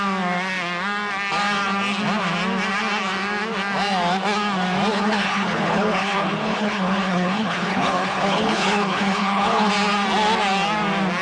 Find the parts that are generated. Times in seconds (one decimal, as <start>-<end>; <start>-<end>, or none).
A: 4.9-9.7